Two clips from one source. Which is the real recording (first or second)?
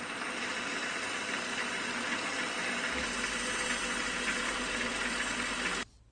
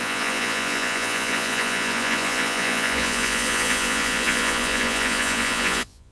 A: first